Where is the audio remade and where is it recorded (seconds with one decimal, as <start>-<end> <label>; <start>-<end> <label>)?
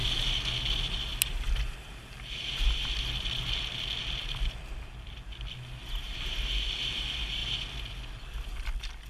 0.0-9.1 recorded